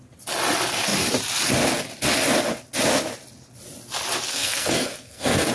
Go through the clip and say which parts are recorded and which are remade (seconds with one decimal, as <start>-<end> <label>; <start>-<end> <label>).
0.0-4.3 recorded; 4.3-5.5 remade